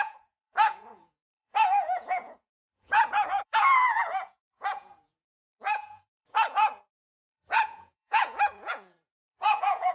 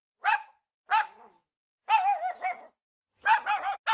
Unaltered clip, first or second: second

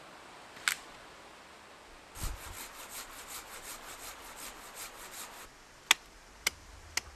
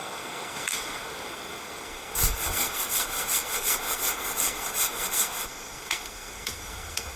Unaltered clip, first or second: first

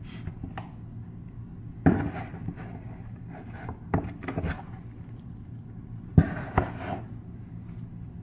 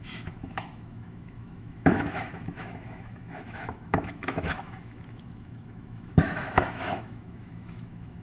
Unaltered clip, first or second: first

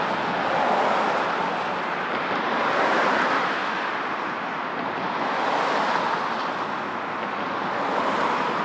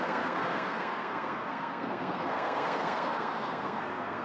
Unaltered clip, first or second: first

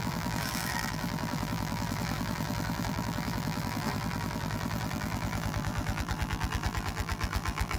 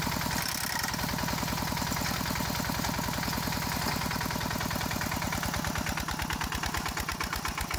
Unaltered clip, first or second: second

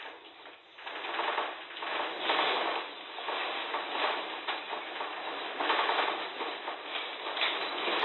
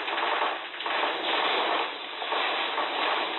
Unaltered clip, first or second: first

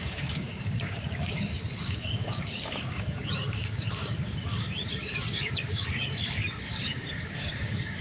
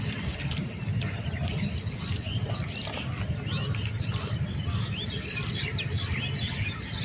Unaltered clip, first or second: second